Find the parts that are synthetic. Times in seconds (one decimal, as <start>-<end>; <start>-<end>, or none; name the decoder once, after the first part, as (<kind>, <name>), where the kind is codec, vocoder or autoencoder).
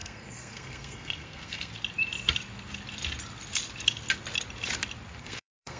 0.0-1.7 (codec, SNAC); 5.2-5.8